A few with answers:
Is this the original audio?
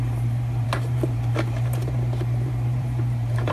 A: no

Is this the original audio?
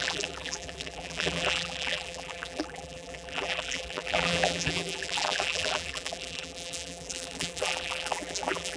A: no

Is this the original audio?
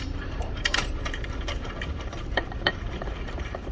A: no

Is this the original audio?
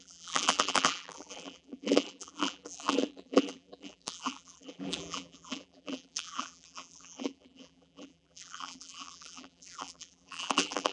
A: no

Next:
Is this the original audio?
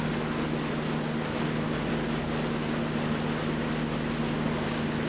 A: yes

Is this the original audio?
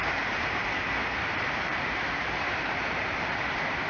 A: no